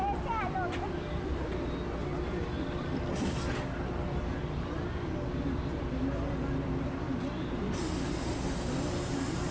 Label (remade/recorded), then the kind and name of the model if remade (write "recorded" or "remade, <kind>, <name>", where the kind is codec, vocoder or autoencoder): recorded